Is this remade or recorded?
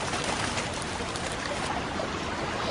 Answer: recorded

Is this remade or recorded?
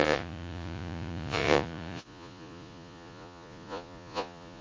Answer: remade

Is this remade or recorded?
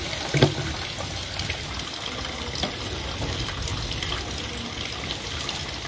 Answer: recorded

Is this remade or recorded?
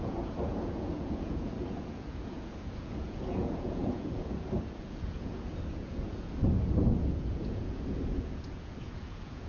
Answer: remade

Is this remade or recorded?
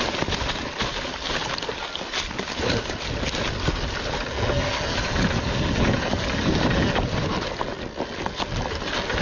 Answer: recorded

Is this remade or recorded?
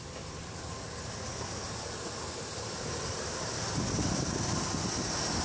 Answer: recorded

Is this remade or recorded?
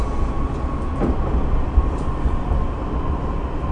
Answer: recorded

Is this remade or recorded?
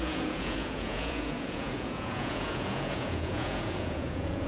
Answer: remade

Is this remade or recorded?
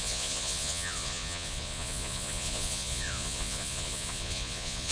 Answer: remade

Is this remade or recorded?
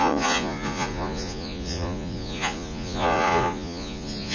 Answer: remade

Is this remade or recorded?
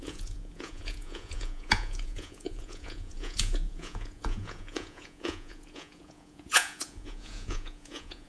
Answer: remade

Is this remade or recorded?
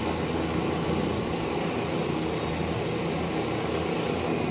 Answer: recorded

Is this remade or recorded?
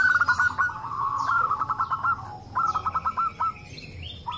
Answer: recorded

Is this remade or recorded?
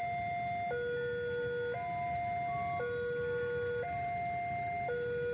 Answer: recorded